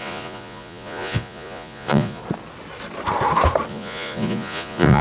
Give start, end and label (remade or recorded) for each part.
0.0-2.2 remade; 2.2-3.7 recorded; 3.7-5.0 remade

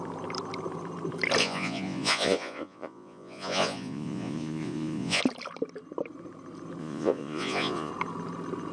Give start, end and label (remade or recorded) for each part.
0.0-1.4 recorded; 1.4-5.2 remade; 5.2-6.8 recorded; 6.8-7.9 remade; 7.9-8.7 recorded

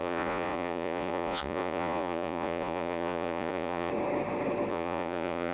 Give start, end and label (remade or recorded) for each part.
0.0-3.9 remade; 3.9-4.7 recorded; 4.7-5.5 remade

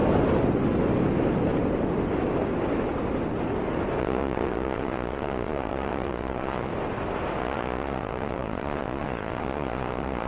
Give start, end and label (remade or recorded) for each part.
0.0-4.0 recorded; 4.0-6.7 remade; 6.7-7.4 recorded; 7.4-10.3 remade